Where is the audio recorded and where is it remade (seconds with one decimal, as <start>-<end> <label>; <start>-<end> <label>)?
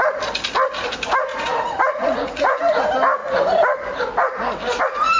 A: 0.0-1.3 recorded; 1.3-2.6 remade; 2.6-5.2 recorded